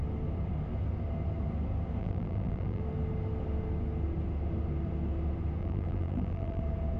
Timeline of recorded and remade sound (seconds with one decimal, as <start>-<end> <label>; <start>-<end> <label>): 0.0-2.0 recorded; 2.0-2.8 remade; 2.8-5.6 recorded; 5.6-6.6 remade; 6.6-7.0 recorded